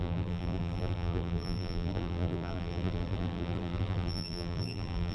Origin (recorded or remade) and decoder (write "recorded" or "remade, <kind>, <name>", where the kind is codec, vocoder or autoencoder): remade, vocoder, BigVGAN v2